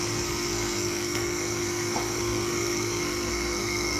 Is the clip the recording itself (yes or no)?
no